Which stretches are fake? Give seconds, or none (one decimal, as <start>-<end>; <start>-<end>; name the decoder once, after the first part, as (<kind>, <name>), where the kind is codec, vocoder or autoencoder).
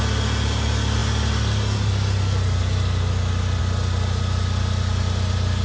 none